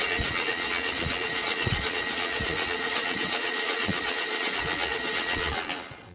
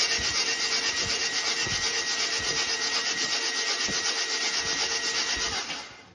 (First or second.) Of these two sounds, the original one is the second